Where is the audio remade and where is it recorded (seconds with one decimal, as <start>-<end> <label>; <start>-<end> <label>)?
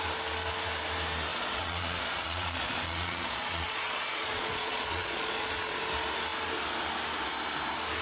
0.0-1.3 recorded; 1.3-5.8 remade; 5.8-8.0 recorded